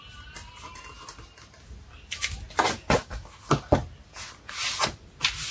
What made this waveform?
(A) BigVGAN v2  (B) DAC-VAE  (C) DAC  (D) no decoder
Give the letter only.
D